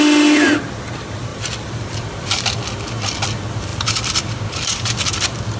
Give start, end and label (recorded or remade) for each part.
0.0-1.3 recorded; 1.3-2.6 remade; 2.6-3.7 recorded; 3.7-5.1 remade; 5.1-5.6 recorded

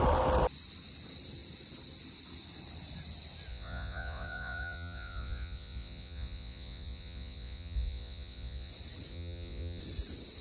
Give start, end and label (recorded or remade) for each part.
0.0-3.5 recorded; 3.5-8.7 remade; 8.7-9.1 recorded; 9.1-9.8 remade; 9.8-10.4 recorded

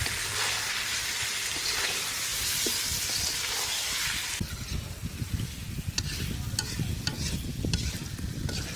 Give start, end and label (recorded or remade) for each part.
0.0-8.8 recorded

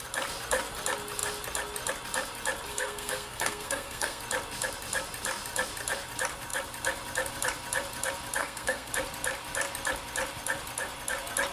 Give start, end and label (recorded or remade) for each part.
0.0-2.7 recorded; 2.7-4.2 remade; 4.2-8.4 recorded; 8.4-8.9 remade; 8.9-11.5 recorded